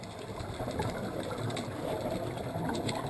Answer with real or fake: real